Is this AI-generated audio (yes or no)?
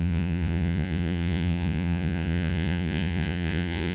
yes